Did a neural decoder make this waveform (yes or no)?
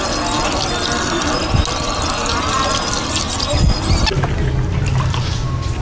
no